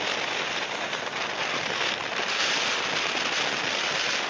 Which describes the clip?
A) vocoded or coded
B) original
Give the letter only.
B